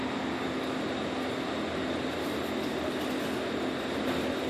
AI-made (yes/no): no